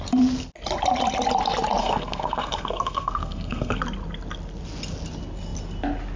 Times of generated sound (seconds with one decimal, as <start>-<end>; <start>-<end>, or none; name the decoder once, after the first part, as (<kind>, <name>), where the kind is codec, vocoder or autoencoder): 1.8-3.8 (codec, SNAC)